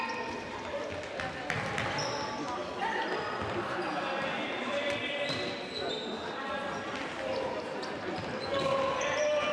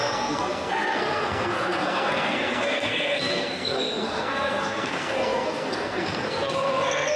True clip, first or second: first